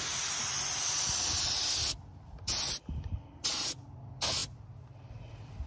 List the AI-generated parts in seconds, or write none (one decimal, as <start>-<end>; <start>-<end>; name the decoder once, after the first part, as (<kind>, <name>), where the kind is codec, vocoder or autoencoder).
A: none